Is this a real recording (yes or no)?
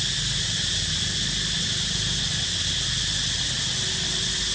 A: yes